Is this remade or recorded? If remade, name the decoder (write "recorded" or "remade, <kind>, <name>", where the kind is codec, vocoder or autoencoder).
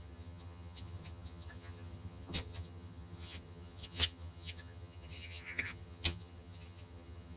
remade, vocoder, HiFi-GAN